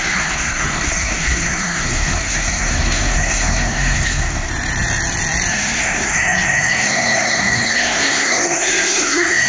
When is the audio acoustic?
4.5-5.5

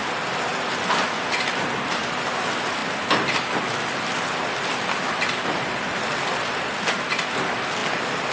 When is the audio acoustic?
0.0-8.3

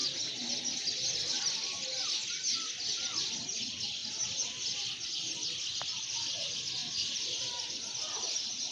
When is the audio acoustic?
0.0-8.7

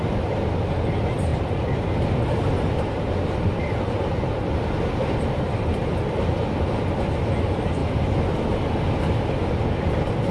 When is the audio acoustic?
0.0-10.3

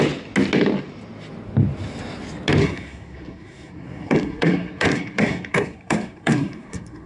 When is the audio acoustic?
0.0-2.6

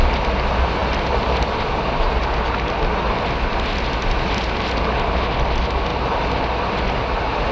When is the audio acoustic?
0.0-7.5